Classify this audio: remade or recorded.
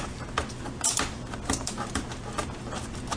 recorded